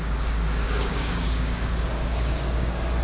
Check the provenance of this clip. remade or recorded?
remade